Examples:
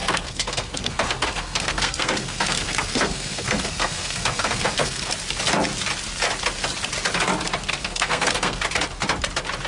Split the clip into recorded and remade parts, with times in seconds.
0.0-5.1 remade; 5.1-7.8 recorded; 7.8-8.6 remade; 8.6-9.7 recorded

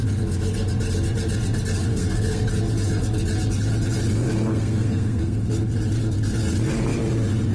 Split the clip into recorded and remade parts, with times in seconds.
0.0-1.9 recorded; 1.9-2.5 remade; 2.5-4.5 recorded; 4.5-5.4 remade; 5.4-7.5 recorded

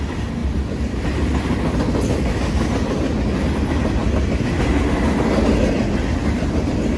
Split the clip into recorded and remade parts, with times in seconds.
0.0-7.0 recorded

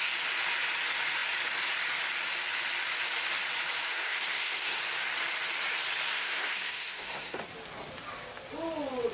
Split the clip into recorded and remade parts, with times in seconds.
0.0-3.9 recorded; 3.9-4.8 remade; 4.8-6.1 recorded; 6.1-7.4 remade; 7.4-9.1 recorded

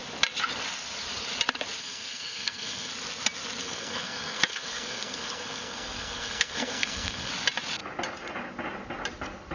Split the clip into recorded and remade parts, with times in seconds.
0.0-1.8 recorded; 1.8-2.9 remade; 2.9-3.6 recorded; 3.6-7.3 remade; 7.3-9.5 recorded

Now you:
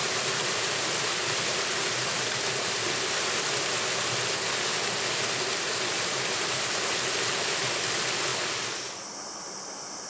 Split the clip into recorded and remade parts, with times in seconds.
0.0-10.1 recorded